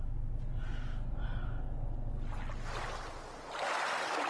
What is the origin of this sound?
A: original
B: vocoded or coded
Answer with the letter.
A